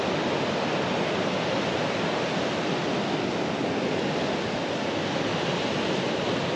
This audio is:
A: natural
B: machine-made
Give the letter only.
A